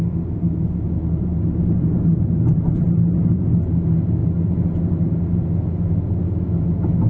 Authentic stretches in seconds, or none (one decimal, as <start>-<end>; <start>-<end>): 0.0-7.1